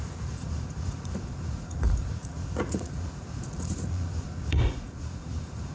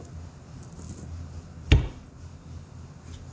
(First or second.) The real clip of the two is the second